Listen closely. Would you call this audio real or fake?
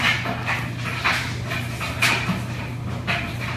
real